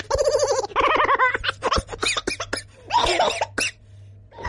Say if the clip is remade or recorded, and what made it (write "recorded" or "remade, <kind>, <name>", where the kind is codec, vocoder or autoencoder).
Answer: recorded